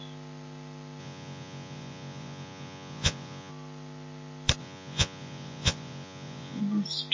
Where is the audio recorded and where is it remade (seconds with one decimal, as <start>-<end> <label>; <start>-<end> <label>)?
0.0-1.0 recorded; 1.0-3.5 remade; 3.5-4.6 recorded; 4.6-6.6 remade; 6.6-7.1 recorded